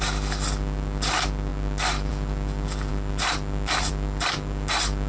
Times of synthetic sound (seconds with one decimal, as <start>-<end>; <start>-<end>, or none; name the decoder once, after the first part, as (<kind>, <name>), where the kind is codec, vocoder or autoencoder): none